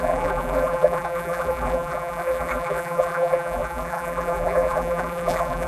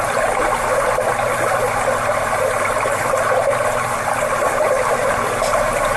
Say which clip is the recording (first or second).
second